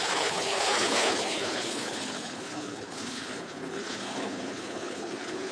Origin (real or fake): fake